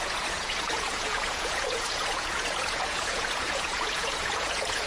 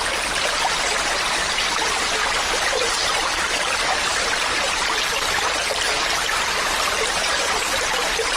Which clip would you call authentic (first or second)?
second